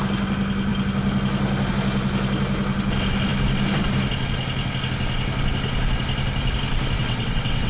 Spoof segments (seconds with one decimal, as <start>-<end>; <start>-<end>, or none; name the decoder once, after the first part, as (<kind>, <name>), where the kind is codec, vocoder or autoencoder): 7.0-7.7 (vocoder, WaveNeXt)